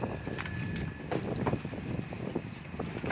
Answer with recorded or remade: recorded